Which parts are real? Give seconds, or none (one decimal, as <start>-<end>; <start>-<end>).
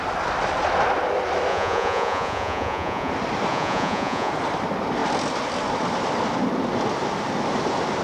0.0-1.5; 3.1-3.5; 4.3-8.0